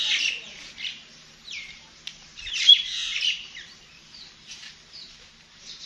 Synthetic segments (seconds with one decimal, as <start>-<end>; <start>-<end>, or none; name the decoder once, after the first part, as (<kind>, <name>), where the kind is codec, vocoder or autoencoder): 2.3-3.8 (vocoder, BigVGAN v2)